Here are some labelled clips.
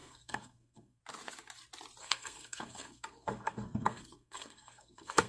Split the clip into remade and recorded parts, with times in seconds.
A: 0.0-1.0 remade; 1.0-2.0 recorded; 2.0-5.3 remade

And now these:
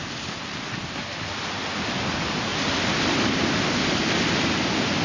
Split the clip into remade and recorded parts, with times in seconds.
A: 0.0-5.0 recorded